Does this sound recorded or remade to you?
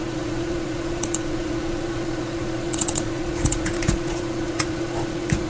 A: remade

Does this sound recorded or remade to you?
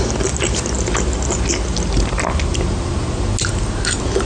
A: recorded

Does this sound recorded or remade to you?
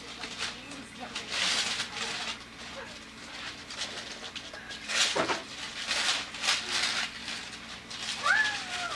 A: recorded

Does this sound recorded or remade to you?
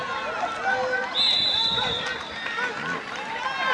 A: recorded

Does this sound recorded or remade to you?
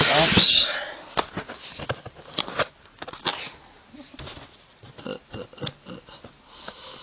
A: recorded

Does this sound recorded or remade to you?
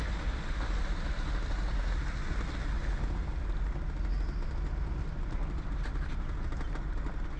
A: recorded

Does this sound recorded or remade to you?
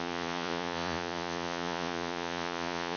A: remade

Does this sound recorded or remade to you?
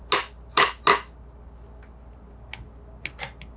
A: recorded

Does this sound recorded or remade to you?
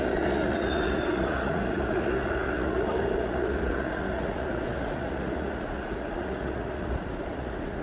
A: remade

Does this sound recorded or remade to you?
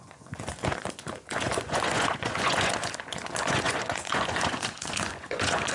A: remade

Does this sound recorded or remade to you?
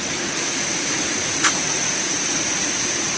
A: remade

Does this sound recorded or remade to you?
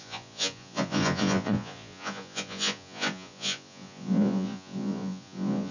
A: remade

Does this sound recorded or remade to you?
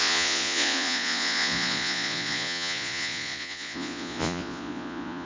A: remade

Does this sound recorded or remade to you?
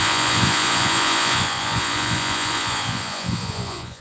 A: remade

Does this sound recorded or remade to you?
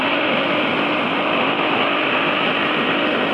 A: recorded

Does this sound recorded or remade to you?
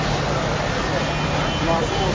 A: recorded